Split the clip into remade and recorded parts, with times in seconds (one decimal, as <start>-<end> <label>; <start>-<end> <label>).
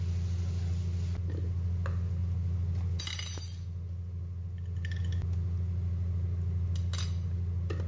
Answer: 0.0-7.9 recorded